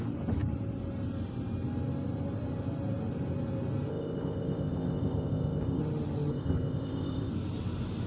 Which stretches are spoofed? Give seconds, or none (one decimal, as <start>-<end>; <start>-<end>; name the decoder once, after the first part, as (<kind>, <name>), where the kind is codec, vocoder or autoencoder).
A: 3.9-5.8 (codec, ZipCodec); 6.3-7.3